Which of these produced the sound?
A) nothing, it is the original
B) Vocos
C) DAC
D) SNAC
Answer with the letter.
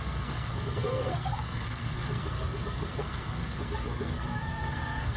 D